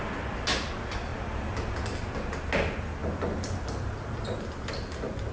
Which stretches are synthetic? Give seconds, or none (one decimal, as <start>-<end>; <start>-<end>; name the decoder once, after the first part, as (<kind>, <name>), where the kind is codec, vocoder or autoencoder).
none